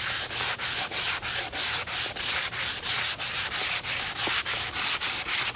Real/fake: real